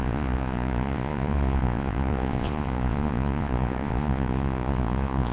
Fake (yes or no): yes